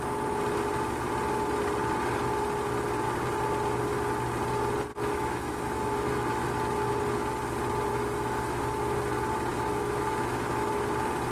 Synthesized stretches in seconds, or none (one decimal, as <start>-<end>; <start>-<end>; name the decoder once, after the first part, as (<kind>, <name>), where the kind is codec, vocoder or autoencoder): 4.9-6.5 (autoencoder, DAC-VAE); 7.9-8.6; 9.5-10.7